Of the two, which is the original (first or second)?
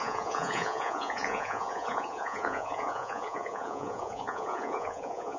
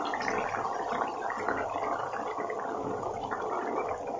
second